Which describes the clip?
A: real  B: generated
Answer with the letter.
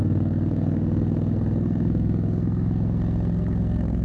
B